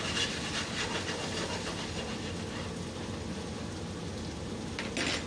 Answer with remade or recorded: recorded